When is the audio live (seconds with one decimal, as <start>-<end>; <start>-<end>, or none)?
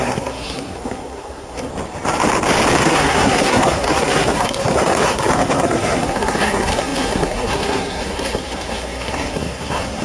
1.7-2.8